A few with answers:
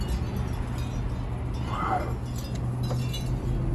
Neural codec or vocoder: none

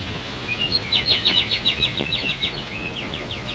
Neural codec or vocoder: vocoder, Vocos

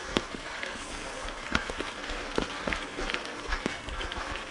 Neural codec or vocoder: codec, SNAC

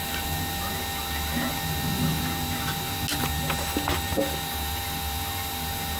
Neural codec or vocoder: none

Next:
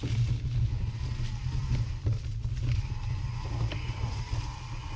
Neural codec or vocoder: none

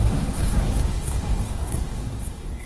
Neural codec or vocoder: codec, SNAC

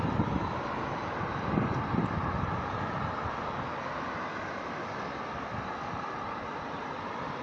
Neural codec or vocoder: none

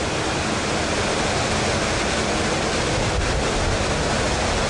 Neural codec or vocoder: none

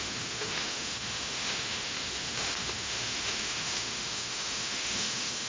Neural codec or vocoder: autoencoder, DAC-VAE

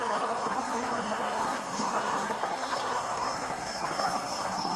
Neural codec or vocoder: codec, SNAC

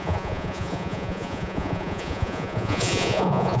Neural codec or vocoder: vocoder, Vocos